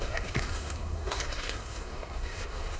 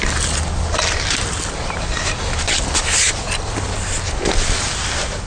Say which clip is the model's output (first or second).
first